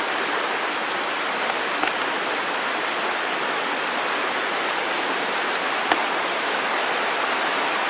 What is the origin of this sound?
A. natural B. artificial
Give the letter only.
A